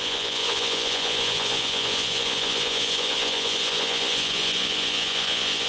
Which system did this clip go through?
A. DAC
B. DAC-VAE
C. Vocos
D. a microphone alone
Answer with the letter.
C